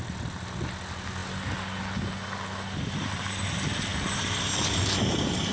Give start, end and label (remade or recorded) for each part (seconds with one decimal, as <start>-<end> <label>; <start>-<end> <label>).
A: 0.0-5.5 recorded